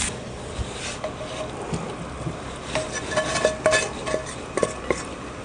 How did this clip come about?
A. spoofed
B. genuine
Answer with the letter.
B